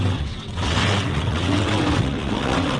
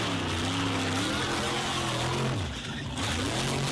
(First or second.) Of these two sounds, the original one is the second